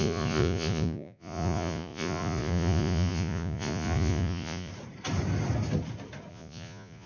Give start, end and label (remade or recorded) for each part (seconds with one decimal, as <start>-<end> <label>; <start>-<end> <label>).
0.0-4.7 remade; 4.7-6.3 recorded; 6.3-7.1 remade